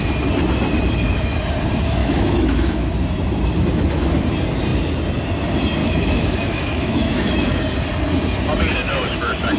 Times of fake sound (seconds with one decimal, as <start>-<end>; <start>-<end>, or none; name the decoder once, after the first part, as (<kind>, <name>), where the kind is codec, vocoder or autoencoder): 2.0-2.9 (autoencoder, DAC-VAE); 5.8-7.6